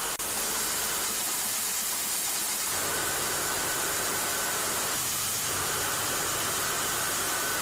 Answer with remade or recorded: remade